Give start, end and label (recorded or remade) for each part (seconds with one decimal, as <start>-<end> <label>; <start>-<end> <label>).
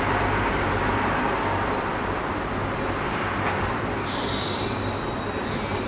0.0-5.9 recorded